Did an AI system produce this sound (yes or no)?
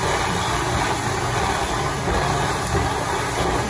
no